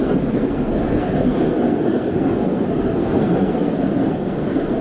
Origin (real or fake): fake